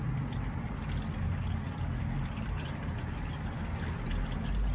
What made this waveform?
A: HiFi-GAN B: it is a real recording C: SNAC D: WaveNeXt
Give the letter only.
B